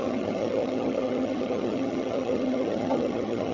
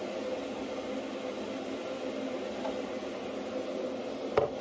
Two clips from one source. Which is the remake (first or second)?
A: first